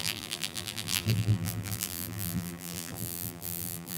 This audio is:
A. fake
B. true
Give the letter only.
A